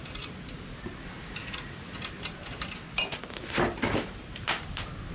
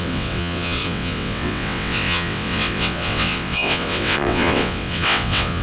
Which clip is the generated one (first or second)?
second